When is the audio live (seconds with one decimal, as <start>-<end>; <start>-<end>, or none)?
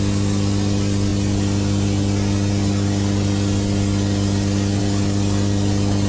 0.0-6.1